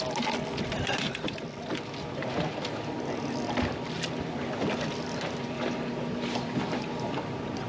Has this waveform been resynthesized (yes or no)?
no